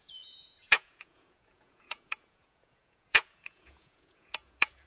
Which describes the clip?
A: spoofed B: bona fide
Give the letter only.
A